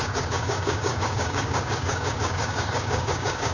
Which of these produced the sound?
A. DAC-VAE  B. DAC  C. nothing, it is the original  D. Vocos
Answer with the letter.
B